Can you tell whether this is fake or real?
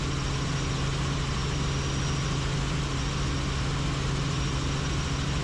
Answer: real